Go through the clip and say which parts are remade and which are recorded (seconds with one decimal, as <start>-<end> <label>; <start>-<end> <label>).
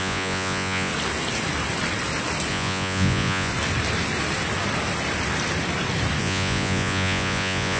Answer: 0.0-0.9 remade; 0.9-2.5 recorded; 2.5-3.5 remade; 3.5-6.2 recorded; 6.2-7.8 remade